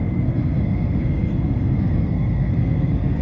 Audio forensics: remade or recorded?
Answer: remade